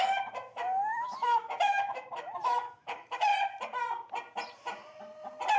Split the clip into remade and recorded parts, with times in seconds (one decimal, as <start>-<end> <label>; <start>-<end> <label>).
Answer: 0.0-3.3 remade; 3.3-5.6 recorded